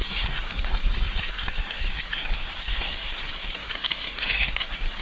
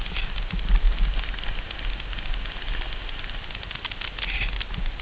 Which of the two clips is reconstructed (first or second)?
first